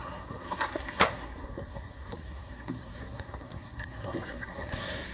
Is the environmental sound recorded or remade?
remade